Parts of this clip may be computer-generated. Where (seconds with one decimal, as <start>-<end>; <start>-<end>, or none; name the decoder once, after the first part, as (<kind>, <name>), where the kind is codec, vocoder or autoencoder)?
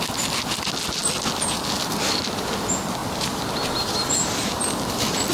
none